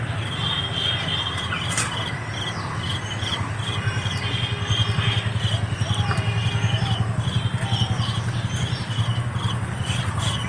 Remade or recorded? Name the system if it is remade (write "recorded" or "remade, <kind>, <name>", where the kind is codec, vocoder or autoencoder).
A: recorded